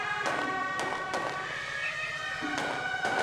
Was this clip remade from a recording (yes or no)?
no